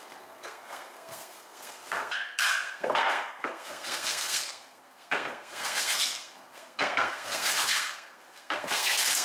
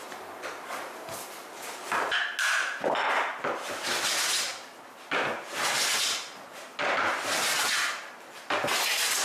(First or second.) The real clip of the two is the second